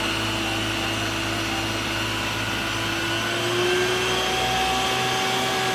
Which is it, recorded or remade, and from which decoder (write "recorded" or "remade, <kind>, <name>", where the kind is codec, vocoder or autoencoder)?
recorded